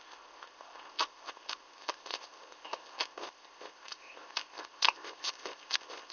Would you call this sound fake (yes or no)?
yes